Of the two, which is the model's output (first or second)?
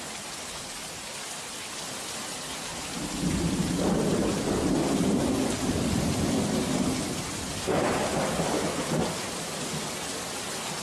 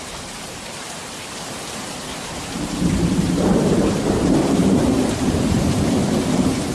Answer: second